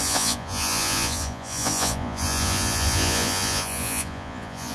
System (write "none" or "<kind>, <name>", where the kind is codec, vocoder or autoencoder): vocoder, Vocos